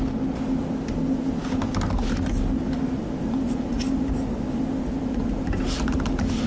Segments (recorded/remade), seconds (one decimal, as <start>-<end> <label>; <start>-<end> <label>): 0.0-6.5 recorded